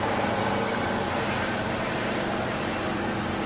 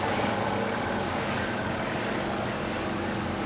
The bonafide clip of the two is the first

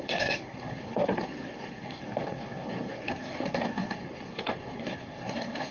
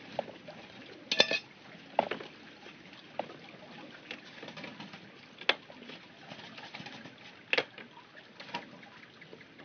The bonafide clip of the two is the second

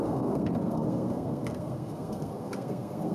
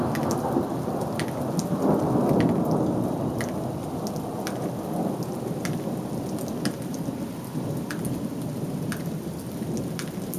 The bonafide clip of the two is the second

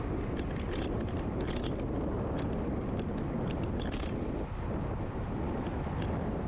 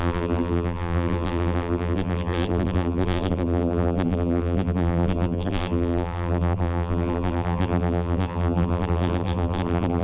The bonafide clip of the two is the first